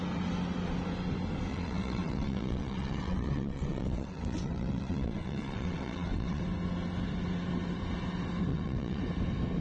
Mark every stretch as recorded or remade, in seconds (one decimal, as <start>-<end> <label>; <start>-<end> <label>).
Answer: 0.0-1.5 recorded; 1.5-6.4 remade; 6.4-8.5 recorded; 8.5-9.0 remade; 9.0-9.6 recorded

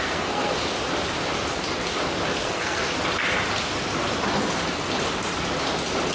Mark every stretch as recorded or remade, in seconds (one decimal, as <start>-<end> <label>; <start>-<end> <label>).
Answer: 0.0-0.6 remade; 0.6-2.4 recorded; 2.4-2.8 remade; 2.8-6.1 recorded

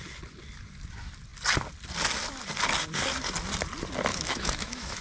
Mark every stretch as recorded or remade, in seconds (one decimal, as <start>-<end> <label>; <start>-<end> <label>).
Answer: 0.0-4.1 recorded; 4.1-5.0 remade

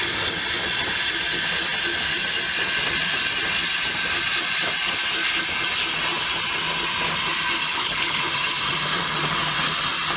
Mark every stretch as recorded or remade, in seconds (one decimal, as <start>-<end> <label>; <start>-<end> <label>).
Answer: 0.0-7.7 recorded; 7.7-8.2 remade; 8.2-10.2 recorded

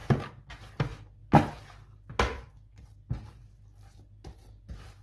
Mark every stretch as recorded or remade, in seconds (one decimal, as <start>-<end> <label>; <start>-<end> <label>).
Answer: 0.0-5.0 recorded

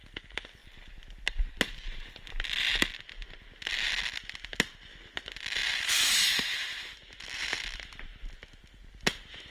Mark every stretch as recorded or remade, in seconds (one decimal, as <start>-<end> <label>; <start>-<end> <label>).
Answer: 0.0-9.5 recorded

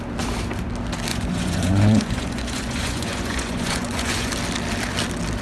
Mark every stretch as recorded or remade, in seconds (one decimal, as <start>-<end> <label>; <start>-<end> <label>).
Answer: 0.0-1.1 recorded; 1.1-4.3 remade; 4.3-5.4 recorded